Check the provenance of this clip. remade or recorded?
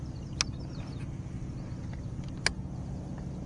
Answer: recorded